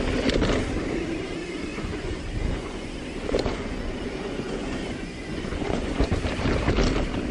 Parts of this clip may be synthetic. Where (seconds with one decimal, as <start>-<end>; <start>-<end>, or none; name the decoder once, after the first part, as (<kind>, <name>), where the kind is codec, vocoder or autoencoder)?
1.7-6.1 (vocoder, Vocos)